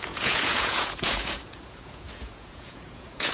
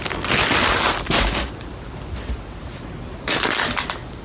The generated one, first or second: first